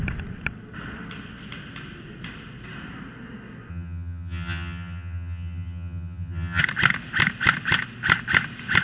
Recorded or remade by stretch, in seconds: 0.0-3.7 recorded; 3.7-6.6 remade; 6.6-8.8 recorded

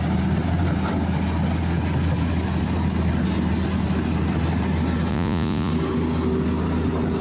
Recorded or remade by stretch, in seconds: 0.0-5.1 recorded; 5.1-5.7 remade; 5.7-7.2 recorded